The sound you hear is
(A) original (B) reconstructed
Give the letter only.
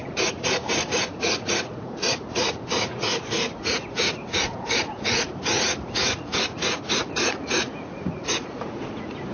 B